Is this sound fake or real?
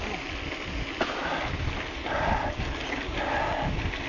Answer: real